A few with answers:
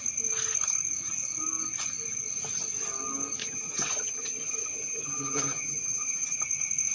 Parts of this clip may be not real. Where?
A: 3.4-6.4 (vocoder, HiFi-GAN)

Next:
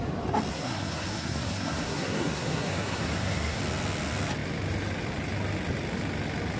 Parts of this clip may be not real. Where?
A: 0.5-3.6 (codec, SNAC)

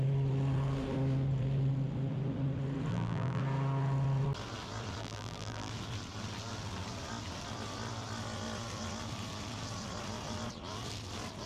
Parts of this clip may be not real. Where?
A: 2.9-3.4 (vocoder, BigVGAN v2); 5.0-5.7